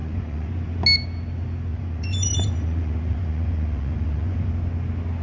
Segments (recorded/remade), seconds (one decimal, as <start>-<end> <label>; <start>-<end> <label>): 0.0-0.5 remade; 0.5-1.7 recorded; 1.7-4.5 remade; 4.5-5.2 recorded